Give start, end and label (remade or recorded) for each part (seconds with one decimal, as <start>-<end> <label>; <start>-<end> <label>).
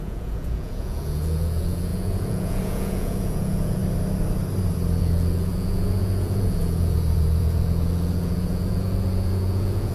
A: 0.0-3.8 remade; 3.8-5.0 recorded; 5.0-9.9 remade